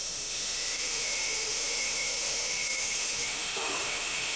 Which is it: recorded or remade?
remade